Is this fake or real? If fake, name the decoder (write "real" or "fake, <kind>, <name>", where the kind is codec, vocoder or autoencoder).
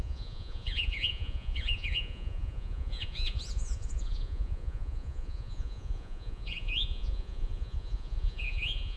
fake, vocoder, Vocos